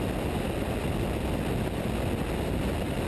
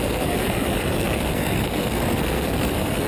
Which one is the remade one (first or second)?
second